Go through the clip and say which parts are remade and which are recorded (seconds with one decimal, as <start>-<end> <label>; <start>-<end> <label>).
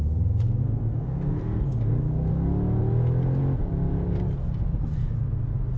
0.0-0.6 recorded; 0.6-1.9 remade; 1.9-5.8 recorded